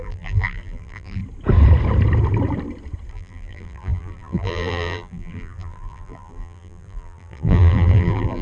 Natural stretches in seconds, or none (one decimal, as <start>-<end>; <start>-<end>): 1.2-3.1